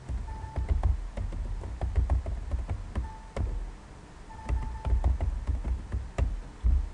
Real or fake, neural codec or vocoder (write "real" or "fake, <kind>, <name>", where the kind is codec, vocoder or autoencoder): real